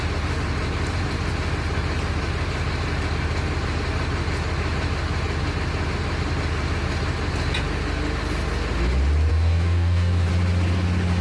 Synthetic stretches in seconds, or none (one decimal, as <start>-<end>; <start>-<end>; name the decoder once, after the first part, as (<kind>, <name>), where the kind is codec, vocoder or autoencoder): 9.3-10.3 (codec, DAC)